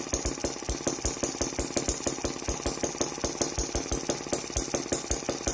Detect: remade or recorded recorded